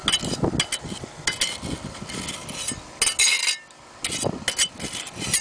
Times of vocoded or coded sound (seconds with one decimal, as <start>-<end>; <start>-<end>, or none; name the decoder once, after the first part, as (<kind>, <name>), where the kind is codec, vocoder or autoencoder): none